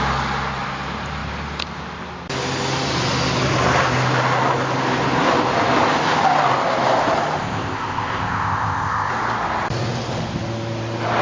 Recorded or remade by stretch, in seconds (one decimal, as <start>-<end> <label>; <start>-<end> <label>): 0.0-7.4 recorded; 7.4-9.1 remade; 9.1-11.2 recorded